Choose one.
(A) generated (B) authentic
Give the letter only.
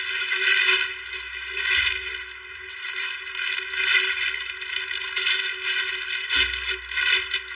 B